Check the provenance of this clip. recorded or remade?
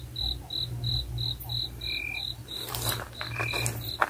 recorded